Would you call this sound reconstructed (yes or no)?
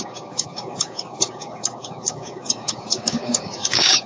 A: yes